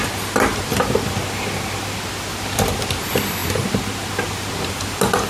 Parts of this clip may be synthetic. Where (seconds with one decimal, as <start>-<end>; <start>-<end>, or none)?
none